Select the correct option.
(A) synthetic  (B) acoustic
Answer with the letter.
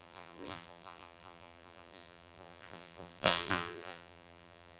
A